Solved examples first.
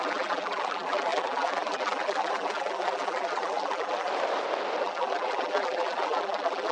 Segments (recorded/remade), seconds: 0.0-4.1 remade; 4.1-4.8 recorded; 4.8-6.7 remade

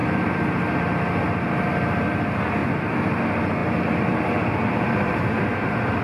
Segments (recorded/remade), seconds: 0.0-2.1 remade; 2.1-2.6 recorded; 2.6-3.2 remade; 3.2-3.6 recorded; 3.6-5.2 remade; 5.2-6.0 recorded

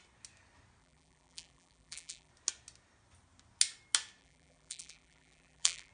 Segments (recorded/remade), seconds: 0.0-0.8 recorded; 0.8-2.3 remade; 2.3-4.2 recorded; 4.2-5.9 remade

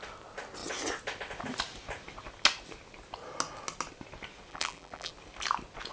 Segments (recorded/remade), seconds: 0.0-4.5 recorded; 4.5-5.1 remade; 5.1-5.9 recorded

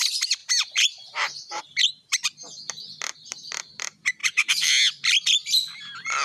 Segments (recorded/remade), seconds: 0.0-0.4 recorded; 0.4-1.6 remade; 1.6-4.2 recorded; 4.2-4.7 remade; 4.7-6.2 recorded

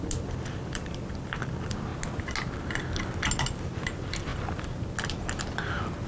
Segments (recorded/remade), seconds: 0.0-1.9 remade; 1.9-3.7 recorded; 3.7-4.3 remade; 4.3-6.1 recorded